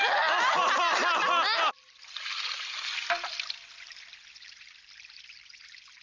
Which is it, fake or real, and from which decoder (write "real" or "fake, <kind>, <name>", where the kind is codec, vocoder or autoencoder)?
real